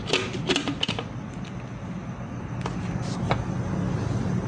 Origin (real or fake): real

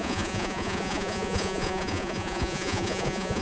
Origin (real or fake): fake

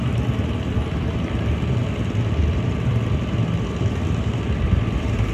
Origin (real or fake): real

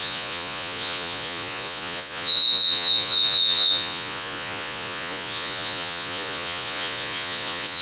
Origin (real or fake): fake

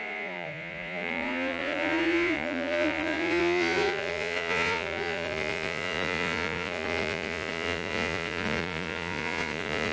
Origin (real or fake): fake